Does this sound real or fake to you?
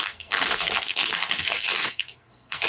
fake